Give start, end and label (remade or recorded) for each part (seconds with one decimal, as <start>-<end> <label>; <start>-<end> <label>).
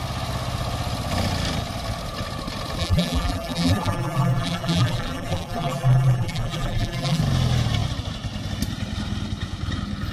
0.0-2.8 recorded; 2.8-7.2 remade; 7.2-10.1 recorded